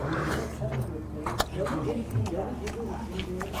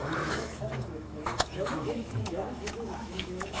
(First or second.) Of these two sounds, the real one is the first